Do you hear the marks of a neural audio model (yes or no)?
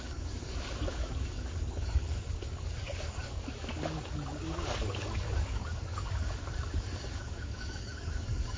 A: yes